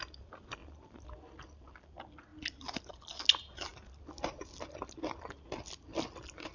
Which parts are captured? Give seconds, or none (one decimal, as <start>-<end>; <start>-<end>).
0.0-6.5